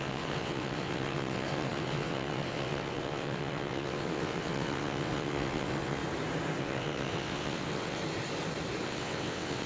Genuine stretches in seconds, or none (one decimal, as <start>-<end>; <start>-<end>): 6.0-6.6; 8.0-8.8